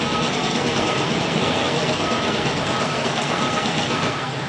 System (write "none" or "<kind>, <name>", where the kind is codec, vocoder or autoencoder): codec, SNAC